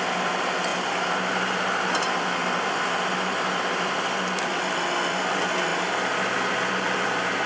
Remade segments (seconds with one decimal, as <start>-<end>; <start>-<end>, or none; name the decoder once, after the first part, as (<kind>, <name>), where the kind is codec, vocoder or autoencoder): none